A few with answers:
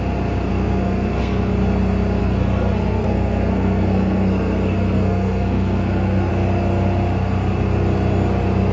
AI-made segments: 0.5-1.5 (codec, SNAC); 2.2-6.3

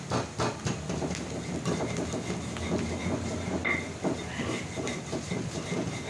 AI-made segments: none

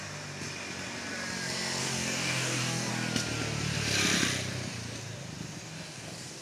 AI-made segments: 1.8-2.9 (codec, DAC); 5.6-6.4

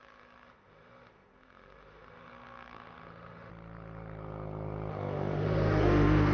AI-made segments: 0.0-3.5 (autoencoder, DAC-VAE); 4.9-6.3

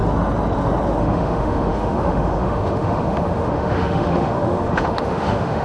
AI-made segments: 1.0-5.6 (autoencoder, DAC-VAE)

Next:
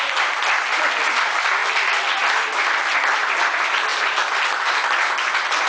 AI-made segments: none

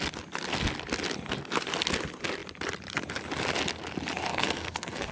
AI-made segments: 4.3-5.1 (codec, SNAC)